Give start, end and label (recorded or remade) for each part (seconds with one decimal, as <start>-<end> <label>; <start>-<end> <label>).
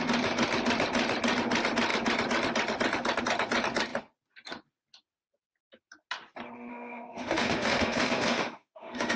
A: 0.0-6.7 recorded; 6.7-9.2 remade